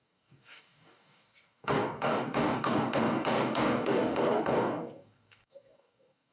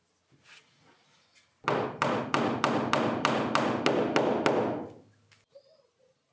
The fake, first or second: first